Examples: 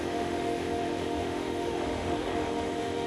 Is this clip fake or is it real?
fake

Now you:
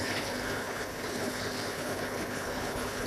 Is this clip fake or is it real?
fake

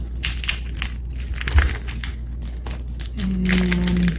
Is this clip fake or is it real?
real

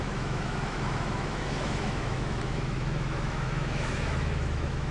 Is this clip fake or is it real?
fake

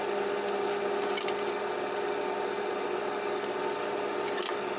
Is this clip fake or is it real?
real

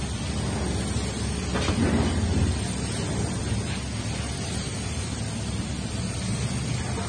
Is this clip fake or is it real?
real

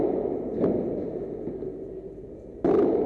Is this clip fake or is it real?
real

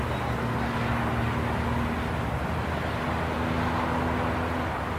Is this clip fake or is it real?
real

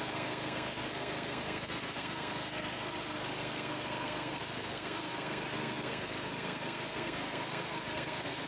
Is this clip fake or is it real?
fake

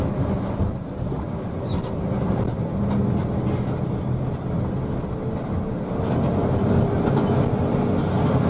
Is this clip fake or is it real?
real